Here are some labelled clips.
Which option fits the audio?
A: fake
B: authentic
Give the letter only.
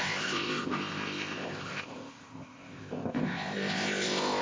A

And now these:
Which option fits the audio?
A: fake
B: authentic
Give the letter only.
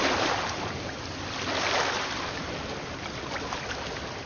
B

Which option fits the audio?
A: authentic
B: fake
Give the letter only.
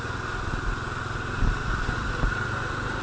A